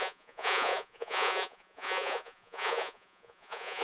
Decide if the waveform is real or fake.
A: fake